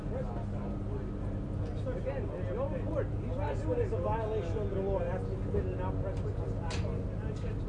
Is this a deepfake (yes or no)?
no